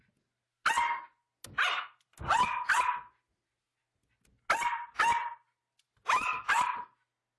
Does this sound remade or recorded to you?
recorded